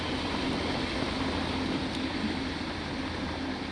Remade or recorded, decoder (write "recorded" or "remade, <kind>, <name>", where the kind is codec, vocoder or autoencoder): recorded